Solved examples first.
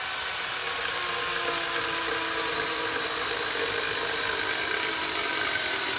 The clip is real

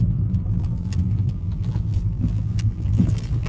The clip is fake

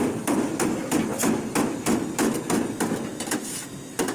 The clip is real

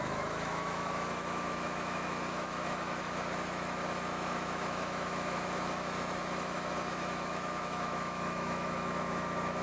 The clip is fake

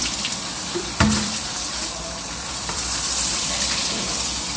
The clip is fake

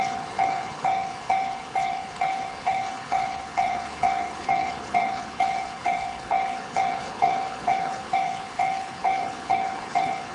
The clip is fake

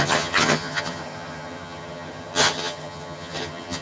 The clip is fake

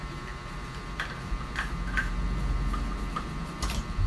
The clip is fake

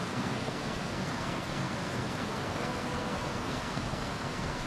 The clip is fake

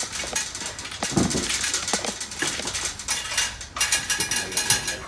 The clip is real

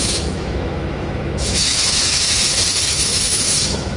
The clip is fake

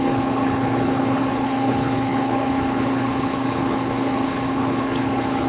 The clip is fake